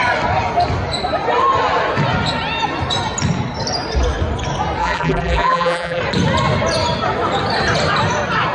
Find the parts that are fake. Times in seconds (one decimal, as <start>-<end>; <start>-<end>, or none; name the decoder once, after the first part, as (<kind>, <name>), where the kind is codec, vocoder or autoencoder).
4.8-6.0 (vocoder, BigVGAN v2)